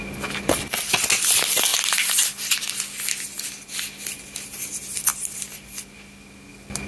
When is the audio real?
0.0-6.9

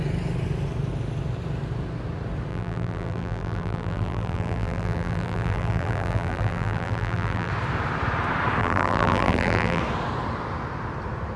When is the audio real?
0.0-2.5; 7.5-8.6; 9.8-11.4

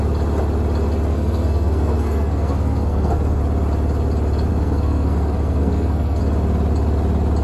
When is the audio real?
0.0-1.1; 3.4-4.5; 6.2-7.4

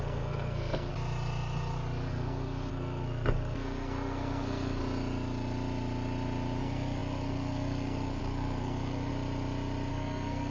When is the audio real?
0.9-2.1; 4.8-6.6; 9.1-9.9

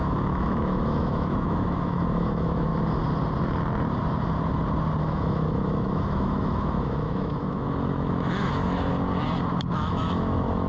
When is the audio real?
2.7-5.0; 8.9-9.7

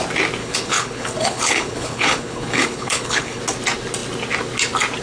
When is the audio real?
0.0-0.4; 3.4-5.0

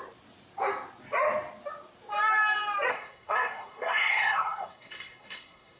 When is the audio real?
0.0-2.9

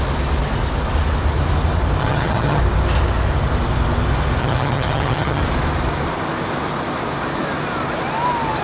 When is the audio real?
0.0-2.0; 2.6-4.4; 5.4-8.6